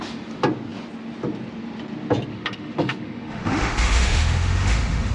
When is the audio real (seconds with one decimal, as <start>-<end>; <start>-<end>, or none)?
0.0-2.3